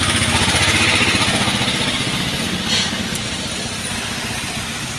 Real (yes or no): yes